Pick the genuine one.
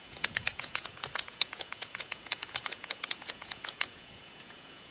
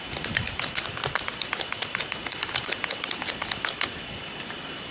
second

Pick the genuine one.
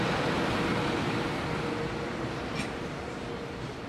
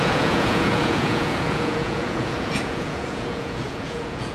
first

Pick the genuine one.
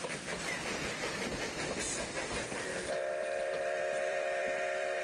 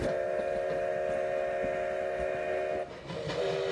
second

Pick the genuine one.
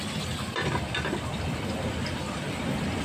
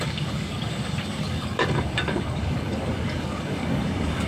first